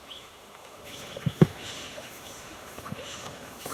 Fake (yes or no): yes